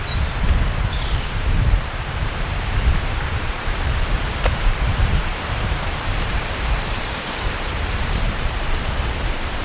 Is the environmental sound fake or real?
fake